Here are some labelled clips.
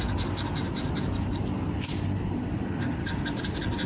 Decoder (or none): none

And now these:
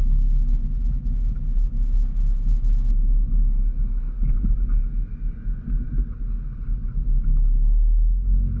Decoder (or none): none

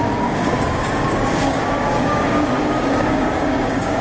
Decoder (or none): codec, DAC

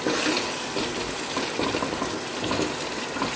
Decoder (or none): none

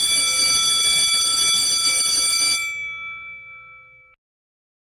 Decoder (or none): none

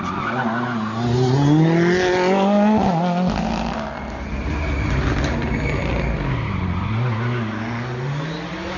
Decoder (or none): none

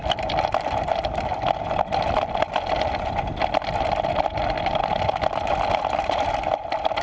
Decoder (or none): none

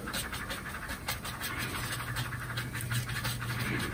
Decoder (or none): none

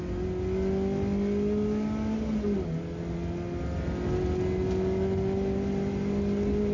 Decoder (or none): none